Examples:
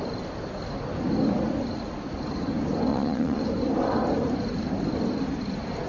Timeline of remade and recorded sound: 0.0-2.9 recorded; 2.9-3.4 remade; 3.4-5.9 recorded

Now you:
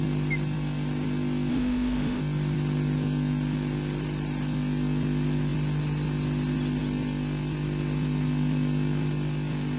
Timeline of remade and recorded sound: 0.0-1.5 recorded; 1.5-2.2 remade; 2.2-9.8 recorded

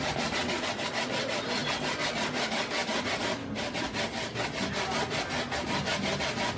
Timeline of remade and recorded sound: 0.0-6.6 recorded

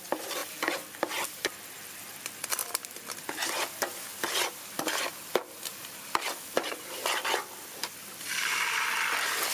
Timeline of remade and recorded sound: 0.0-9.5 recorded